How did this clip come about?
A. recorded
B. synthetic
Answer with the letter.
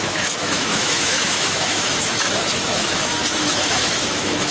B